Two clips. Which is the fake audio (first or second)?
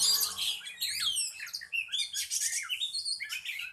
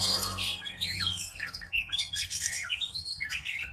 second